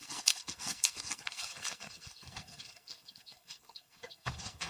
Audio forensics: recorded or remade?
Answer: remade